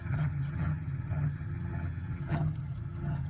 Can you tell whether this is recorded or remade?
remade